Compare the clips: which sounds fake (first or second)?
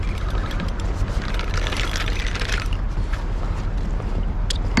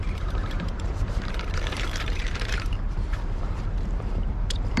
second